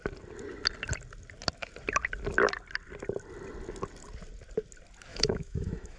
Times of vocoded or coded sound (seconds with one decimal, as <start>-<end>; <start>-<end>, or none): 5.1-6.0